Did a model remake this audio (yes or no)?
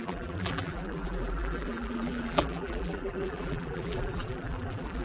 yes